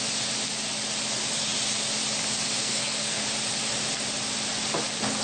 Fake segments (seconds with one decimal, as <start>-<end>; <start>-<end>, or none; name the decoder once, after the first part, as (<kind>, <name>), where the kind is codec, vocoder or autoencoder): 2.6-3.2 (codec, SNAC)